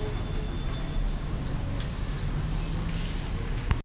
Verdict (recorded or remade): recorded